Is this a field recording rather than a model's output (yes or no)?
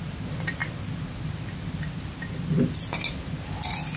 yes